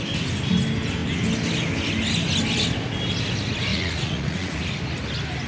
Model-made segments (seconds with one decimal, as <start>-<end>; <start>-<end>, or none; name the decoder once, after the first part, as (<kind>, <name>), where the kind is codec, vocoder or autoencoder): 3.7-4.6 (vocoder, Vocos)